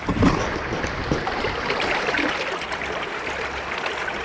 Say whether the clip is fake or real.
real